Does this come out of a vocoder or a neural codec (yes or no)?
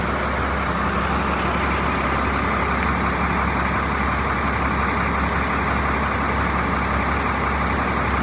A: no